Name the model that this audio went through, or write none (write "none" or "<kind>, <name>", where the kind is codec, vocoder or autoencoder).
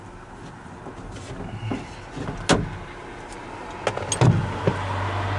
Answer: none